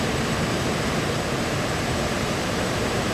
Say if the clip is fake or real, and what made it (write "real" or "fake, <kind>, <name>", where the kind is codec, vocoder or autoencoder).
fake, vocoder, BigVGAN v2